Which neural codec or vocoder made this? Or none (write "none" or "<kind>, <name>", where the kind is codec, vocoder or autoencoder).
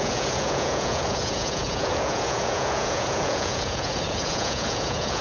vocoder, Vocos